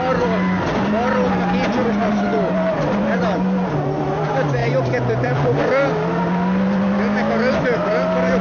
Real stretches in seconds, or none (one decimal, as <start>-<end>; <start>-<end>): 0.0-4.6; 5.6-8.4